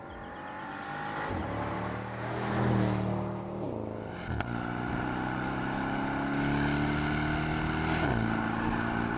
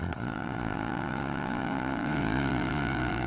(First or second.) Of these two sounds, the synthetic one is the second